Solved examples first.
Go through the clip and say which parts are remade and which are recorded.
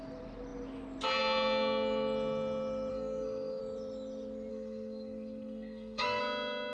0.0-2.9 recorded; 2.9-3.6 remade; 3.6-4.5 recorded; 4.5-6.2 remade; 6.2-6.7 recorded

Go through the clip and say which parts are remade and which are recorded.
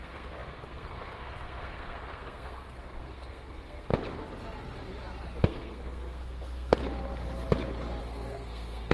0.0-3.9 remade; 3.9-5.4 recorded; 5.4-6.8 remade; 6.8-8.0 recorded; 8.0-8.9 remade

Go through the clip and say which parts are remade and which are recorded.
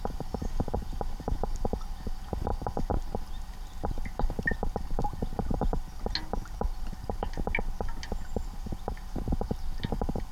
0.0-10.3 recorded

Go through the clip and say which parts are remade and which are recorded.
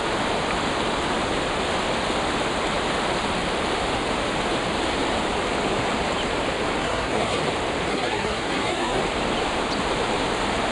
0.0-6.8 recorded; 6.8-7.4 remade; 7.4-7.9 recorded; 7.9-9.0 remade; 9.0-10.7 recorded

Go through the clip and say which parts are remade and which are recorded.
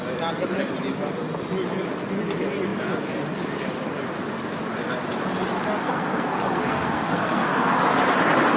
0.0-5.8 recorded; 5.8-7.8 remade; 7.8-8.6 recorded